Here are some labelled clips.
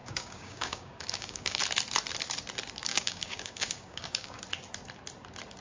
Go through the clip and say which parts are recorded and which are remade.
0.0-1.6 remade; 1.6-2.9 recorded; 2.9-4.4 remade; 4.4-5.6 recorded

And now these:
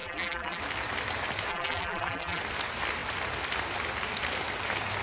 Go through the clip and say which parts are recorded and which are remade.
0.0-0.6 remade; 0.6-1.5 recorded; 1.5-2.4 remade; 2.4-5.0 recorded

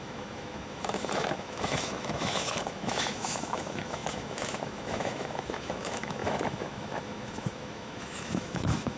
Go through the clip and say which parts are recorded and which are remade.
0.0-9.0 remade

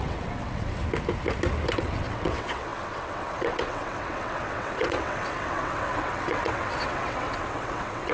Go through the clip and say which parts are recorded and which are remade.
0.0-0.8 remade; 0.8-1.8 recorded; 1.8-8.1 remade

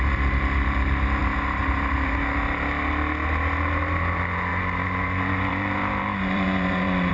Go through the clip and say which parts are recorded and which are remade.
0.0-1.2 recorded; 1.2-2.2 remade; 2.2-4.5 recorded; 4.5-7.1 remade

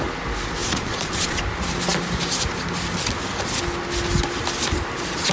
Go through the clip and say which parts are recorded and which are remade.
0.0-0.6 recorded; 0.6-1.4 remade; 1.4-5.3 recorded

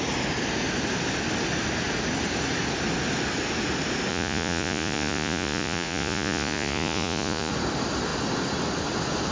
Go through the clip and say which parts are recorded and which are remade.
0.0-4.1 recorded; 4.1-7.5 remade; 7.5-9.3 recorded

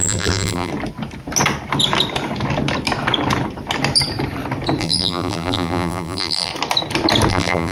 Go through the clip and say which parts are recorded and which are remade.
0.0-0.7 remade; 0.7-4.8 recorded; 4.8-6.5 remade; 6.5-7.3 recorded; 7.3-7.7 remade